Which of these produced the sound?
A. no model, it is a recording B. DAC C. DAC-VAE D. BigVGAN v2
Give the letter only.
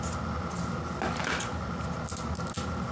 A